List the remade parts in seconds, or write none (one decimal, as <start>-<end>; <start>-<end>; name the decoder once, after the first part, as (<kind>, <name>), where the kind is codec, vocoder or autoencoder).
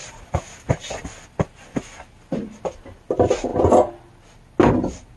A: none